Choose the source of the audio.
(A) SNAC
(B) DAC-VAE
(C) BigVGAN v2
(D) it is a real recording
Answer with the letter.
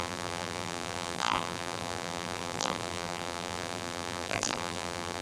C